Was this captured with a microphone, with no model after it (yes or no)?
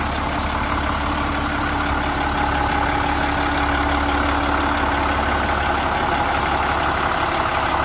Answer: yes